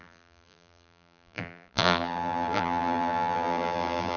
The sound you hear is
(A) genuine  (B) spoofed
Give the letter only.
B